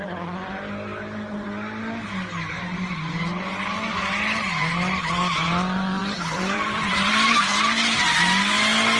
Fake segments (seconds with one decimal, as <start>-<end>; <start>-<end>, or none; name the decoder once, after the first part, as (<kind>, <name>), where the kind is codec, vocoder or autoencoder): 6.0-7.1 (vocoder, BigVGAN v2)